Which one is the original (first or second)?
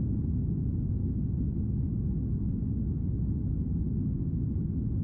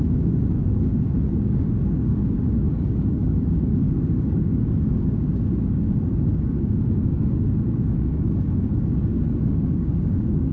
first